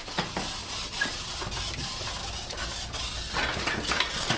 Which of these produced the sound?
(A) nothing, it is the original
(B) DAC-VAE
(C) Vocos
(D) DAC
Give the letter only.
A